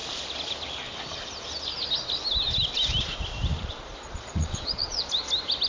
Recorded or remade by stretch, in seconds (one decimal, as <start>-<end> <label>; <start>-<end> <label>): 0.0-3.5 recorded; 3.5-5.1 remade; 5.1-5.7 recorded